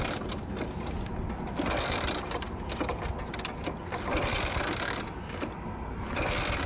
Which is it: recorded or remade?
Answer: recorded